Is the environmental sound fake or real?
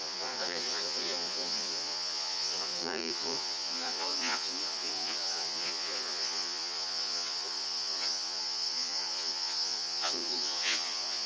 fake